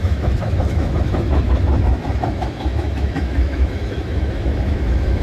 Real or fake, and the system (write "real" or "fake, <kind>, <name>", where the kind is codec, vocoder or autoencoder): fake, autoencoder, DAC-VAE